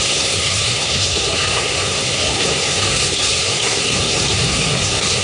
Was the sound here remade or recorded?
remade